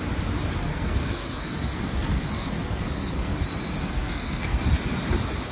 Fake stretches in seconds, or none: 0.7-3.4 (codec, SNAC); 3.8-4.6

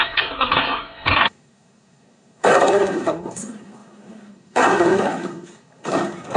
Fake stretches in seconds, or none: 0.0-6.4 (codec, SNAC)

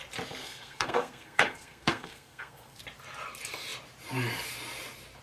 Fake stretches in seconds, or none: 0.4-2.8 (codec, SNAC)

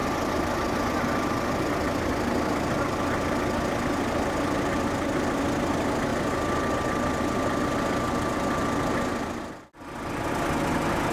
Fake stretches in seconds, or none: none